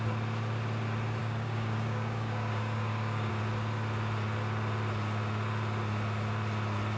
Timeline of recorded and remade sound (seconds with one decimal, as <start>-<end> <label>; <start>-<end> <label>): 0.0-1.2 recorded; 1.2-3.3 remade; 3.3-7.0 recorded